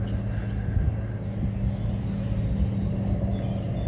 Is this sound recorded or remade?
recorded